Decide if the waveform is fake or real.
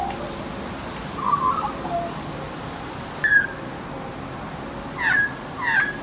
real